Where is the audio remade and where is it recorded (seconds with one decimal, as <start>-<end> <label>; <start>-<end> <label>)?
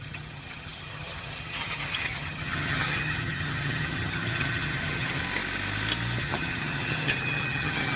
0.0-5.2 remade; 5.2-6.2 recorded; 6.2-8.0 remade